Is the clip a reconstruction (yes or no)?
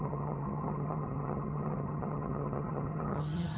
yes